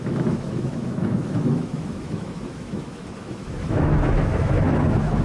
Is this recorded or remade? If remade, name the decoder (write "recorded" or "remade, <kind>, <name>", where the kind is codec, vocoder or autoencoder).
remade, autoencoder, DAC-VAE